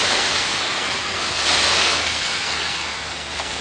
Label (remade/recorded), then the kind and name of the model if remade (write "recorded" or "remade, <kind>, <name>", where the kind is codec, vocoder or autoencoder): remade, codec, SNAC